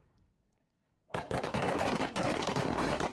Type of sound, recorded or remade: remade